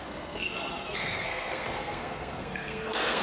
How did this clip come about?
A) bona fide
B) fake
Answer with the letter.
B